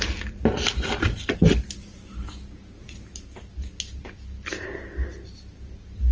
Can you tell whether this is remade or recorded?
recorded